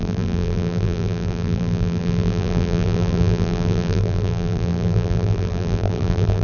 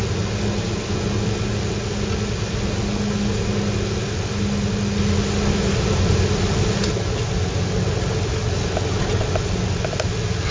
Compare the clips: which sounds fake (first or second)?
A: first